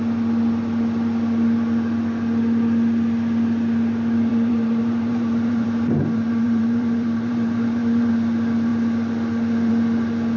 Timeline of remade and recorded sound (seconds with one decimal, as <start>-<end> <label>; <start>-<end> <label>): 0.0-4.3 recorded; 4.3-8.1 remade; 8.1-10.4 recorded